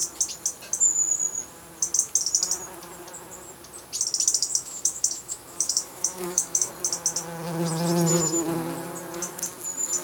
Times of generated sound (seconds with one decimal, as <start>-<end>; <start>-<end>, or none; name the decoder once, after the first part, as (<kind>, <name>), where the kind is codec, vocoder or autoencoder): 4.4-6.7 (autoencoder, DAC-VAE)